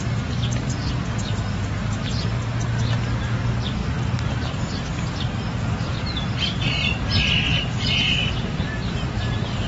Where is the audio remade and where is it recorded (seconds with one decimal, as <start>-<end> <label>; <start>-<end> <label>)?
0.0-3.8 recorded; 3.8-5.3 remade; 5.3-7.5 recorded; 7.5-9.7 remade